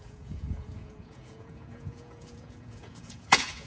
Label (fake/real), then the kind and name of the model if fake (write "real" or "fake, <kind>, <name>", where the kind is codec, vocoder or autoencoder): fake, vocoder, Vocos